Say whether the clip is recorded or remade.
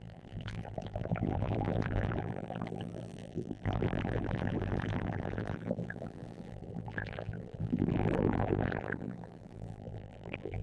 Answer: remade